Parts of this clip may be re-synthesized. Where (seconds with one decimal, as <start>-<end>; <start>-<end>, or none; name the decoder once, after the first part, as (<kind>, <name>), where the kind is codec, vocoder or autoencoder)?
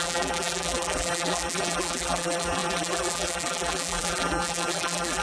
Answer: 0.0-5.2 (vocoder, BigVGAN v2)